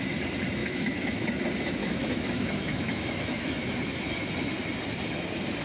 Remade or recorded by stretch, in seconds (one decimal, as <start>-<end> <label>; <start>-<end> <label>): 0.0-0.6 recorded; 0.6-1.3 remade; 1.3-1.8 recorded; 1.8-4.3 remade; 4.3-5.6 recorded